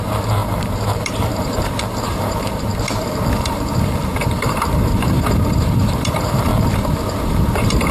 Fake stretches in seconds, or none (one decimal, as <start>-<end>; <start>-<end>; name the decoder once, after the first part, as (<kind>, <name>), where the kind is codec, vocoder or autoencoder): 0.0-2.7 (vocoder, BigVGAN v2); 3.3-6.5; 7.2-7.9

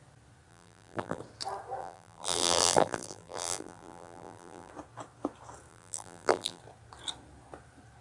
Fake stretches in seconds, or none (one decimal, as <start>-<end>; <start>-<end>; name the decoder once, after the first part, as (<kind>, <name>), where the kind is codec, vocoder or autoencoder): 0.5-1.2 (vocoder, BigVGAN v2); 1.8-4.7; 5.7-6.6

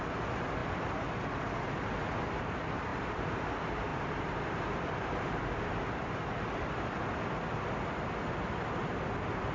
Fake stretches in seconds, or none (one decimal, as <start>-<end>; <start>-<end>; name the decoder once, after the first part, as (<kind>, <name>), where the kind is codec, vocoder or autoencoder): 2.9-3.5 (vocoder, BigVGAN v2); 3.9-5.8

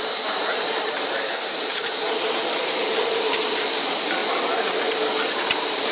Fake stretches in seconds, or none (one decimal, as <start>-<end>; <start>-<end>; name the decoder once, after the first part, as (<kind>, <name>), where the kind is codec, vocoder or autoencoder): 0.0-4.2 (vocoder, BigVGAN v2); 5.3-5.9